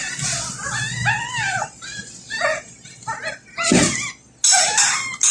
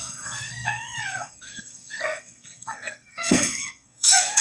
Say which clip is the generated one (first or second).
second